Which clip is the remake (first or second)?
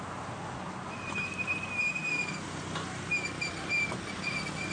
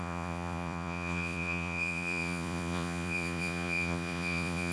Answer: second